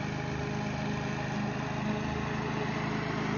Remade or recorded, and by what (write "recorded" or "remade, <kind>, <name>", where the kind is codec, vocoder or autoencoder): recorded